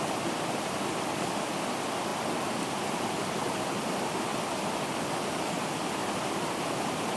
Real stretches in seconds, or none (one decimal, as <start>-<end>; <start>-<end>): 0.0-7.2